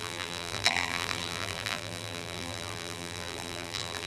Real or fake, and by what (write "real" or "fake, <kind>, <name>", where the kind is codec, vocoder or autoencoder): fake, vocoder, BigVGAN v2